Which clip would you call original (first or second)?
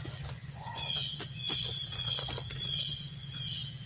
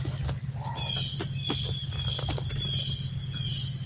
second